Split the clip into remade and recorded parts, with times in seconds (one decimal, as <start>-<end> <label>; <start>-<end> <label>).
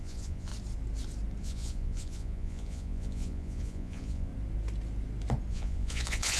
0.0-0.5 remade; 0.5-1.4 recorded; 1.4-4.3 remade; 4.3-5.5 recorded; 5.5-6.4 remade